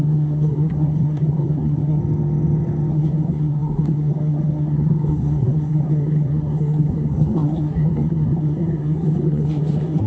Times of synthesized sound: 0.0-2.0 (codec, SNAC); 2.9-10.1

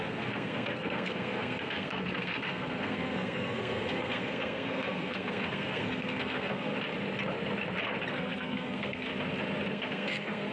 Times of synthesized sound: 0.0-6.7 (codec, SNAC); 8.1-9.1; 9.7-10.5